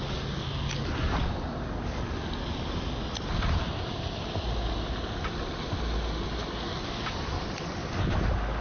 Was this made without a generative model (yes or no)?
yes